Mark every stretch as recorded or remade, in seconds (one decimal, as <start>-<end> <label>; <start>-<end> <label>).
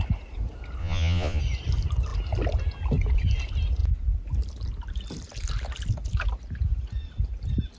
0.0-0.8 recorded; 0.8-1.4 remade; 1.4-7.8 recorded